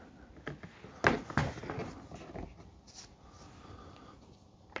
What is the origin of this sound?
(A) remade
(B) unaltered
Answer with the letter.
B